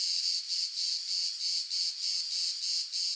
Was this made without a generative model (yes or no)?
yes